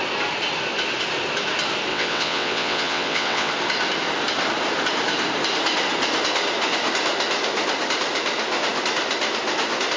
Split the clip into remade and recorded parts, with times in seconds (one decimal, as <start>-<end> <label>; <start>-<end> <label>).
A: 0.0-1.9 recorded; 1.9-3.5 remade; 3.5-10.0 recorded